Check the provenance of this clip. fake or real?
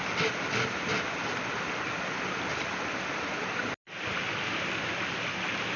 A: real